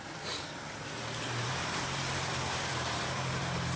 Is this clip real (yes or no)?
no